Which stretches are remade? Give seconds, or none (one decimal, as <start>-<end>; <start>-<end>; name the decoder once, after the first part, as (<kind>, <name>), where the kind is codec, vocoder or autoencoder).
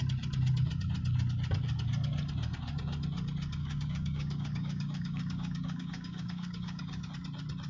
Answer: 3.6-7.1 (codec, DAC)